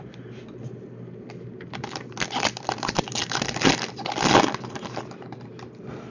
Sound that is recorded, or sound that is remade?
recorded